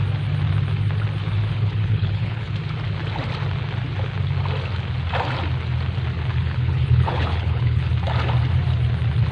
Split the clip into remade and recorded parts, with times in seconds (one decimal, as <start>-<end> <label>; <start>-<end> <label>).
0.0-1.5 recorded; 1.5-2.5 remade; 2.5-6.3 recorded; 6.3-7.9 remade; 7.9-9.3 recorded